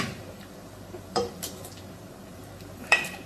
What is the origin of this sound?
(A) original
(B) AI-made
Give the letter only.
B